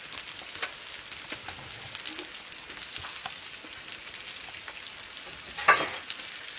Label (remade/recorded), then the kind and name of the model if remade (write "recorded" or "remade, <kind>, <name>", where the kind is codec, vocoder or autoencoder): recorded